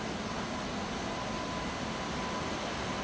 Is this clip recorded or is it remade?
recorded